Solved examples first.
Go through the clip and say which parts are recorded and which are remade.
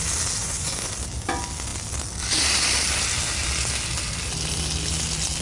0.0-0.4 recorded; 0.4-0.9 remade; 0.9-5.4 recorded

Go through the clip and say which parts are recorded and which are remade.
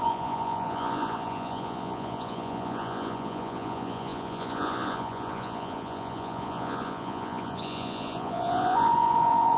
0.0-9.6 remade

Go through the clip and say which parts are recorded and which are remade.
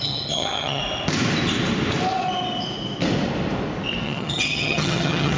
0.0-0.8 remade; 0.8-4.0 recorded; 4.0-5.4 remade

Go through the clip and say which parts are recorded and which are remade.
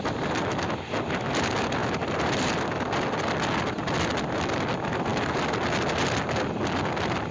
0.0-7.3 recorded